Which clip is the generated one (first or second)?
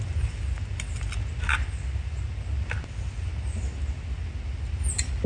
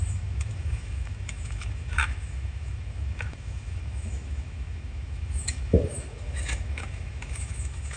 second